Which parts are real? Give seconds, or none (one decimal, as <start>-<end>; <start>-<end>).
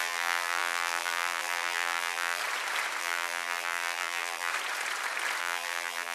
2.4-3.0; 4.5-5.4